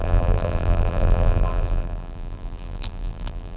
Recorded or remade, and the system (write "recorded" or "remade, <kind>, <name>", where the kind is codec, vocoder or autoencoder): remade, vocoder, BigVGAN v2